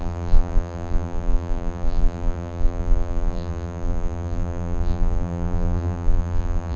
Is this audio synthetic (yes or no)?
yes